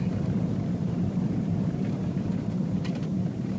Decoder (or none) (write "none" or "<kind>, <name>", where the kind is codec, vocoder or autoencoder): vocoder, BigVGAN v2